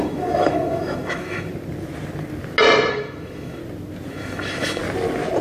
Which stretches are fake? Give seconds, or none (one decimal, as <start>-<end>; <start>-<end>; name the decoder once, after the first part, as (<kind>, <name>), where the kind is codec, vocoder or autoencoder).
0.0-1.5 (autoencoder, DAC-VAE); 2.9-3.6; 4.1-4.8